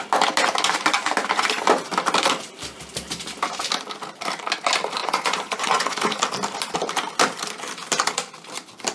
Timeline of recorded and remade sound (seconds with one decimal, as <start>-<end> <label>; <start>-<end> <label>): 0.0-5.0 recorded; 5.0-6.2 remade; 6.2-8.9 recorded